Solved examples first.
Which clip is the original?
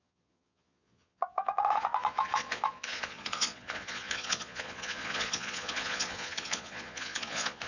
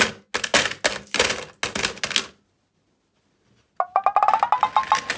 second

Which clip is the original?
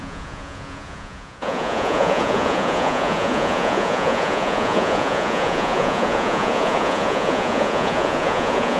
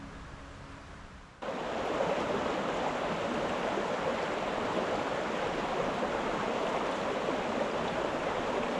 second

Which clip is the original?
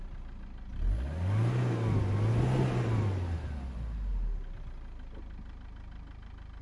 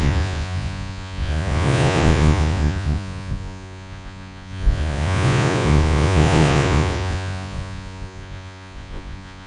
first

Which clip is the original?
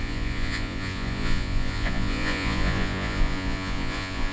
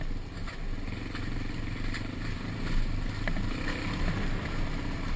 second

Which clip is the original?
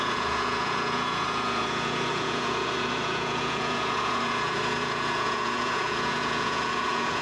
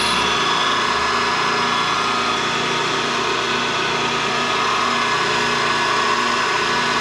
second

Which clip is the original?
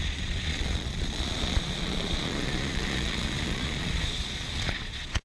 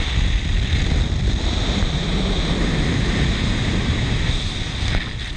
second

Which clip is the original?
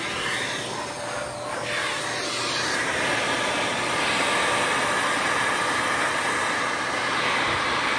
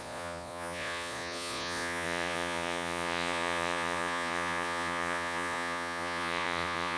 first